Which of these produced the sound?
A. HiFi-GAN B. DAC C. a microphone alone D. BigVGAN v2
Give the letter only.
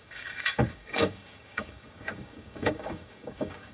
B